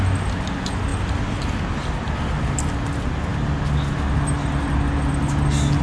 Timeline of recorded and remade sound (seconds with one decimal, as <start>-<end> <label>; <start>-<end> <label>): 0.0-5.8 recorded